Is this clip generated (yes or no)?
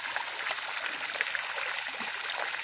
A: no